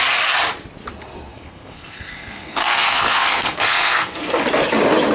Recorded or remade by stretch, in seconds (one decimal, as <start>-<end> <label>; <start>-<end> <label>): 0.0-1.3 recorded; 1.3-4.4 remade; 4.4-5.1 recorded